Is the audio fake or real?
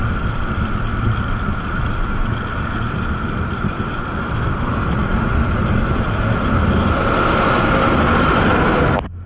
real